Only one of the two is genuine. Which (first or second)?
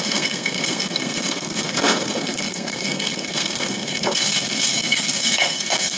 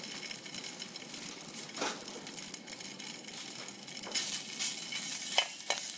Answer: second